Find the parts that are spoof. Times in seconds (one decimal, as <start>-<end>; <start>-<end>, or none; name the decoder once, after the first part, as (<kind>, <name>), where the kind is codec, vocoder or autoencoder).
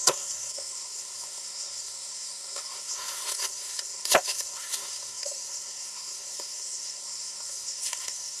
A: 0.0-8.4 (codec, SNAC)